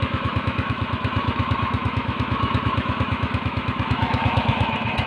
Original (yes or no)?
no